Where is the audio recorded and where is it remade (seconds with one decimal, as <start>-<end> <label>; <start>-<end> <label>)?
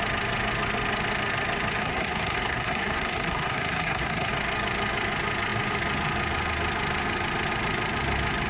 0.0-1.8 recorded; 1.8-4.3 remade; 4.3-8.5 recorded